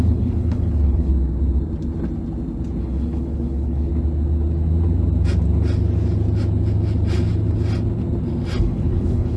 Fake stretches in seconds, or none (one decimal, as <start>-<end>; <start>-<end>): 0.0-1.1; 2.8-3.9; 8.6-9.4